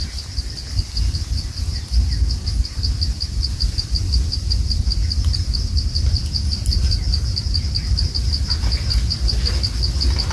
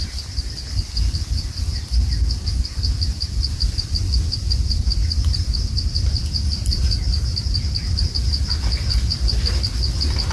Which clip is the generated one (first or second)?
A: second